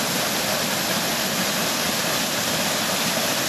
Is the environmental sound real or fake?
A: real